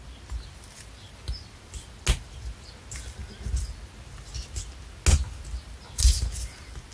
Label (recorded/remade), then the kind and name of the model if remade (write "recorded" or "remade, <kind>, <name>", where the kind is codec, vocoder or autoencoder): recorded